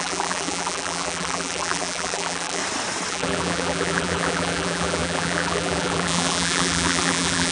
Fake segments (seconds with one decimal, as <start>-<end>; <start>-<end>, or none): 0.0-2.6; 3.1-7.5